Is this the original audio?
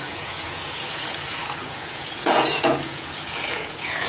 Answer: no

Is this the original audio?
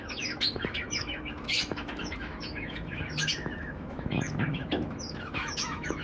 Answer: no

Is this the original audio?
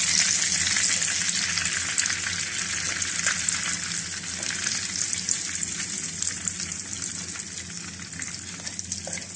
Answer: yes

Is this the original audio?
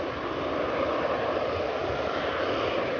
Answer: yes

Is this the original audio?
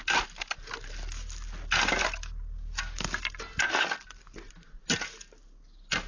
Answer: yes